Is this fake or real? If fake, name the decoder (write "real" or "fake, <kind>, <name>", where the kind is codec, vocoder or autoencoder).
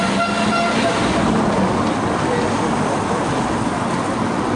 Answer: real